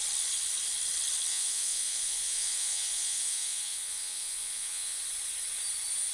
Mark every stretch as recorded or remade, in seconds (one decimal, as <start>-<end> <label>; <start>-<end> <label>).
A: 0.0-1.3 recorded; 1.3-5.0 remade; 5.0-6.1 recorded